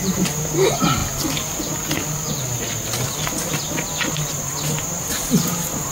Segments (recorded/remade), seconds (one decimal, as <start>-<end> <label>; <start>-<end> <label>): 0.0-5.9 recorded